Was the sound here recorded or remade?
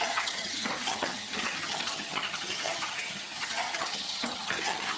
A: remade